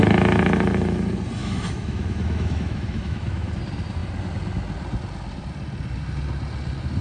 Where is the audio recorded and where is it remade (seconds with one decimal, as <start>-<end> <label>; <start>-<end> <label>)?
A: 0.0-1.4 recorded; 1.4-3.5 remade; 3.5-7.0 recorded